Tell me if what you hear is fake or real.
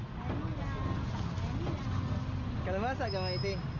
real